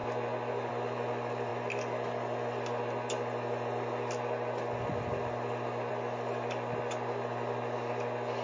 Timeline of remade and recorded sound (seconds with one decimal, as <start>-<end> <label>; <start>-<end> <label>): 0.0-8.4 recorded